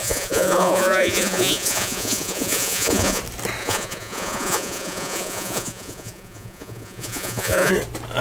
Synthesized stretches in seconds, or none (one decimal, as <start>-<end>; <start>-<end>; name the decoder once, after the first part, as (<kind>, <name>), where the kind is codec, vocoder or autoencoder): 0.0-3.2 (vocoder, Vocos); 3.6-7.7

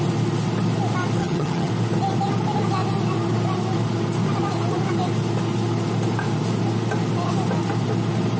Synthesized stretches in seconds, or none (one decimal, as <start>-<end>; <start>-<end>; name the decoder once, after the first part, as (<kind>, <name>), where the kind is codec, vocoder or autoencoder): 1.2-1.7 (vocoder, HiFi-GAN)

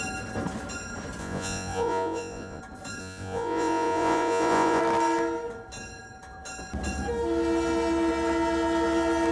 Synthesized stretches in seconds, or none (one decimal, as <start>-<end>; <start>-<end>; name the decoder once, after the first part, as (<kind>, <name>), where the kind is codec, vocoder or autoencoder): 1.2-2.6 (vocoder, Vocos); 3.0-4.8

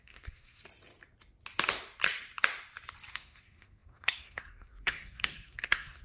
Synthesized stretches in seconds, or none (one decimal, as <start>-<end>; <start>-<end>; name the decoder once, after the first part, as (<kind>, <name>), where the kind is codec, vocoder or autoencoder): 0.0-0.6 (codec, SNAC); 3.1-6.0

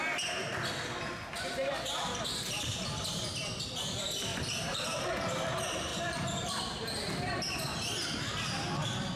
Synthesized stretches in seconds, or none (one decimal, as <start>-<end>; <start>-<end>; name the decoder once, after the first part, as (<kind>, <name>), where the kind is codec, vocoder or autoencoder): 4.3-4.8 (vocoder, BigVGAN v2); 5.9-6.6

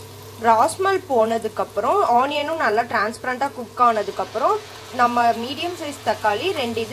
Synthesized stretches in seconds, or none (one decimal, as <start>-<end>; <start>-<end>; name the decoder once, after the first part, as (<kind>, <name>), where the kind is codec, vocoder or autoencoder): 1.2-6.9 (vocoder, Vocos)

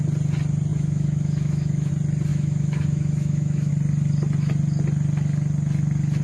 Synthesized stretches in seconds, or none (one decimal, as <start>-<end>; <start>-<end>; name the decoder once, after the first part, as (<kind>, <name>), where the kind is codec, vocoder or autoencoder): 0.7-1.9 (autoencoder, DAC-VAE); 2.3-3.7

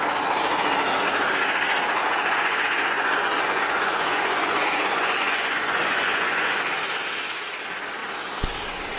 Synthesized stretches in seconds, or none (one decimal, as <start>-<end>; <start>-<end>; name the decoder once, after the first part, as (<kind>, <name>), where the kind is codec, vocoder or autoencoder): 2.0-6.6 (vocoder, Vocos)